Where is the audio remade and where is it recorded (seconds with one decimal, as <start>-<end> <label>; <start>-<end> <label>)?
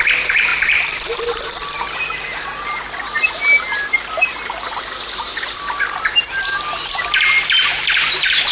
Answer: 0.0-8.5 recorded